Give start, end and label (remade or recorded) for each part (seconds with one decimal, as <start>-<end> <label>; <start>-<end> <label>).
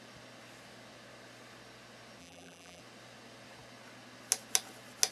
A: 0.0-2.2 recorded; 2.2-2.8 remade; 2.8-5.1 recorded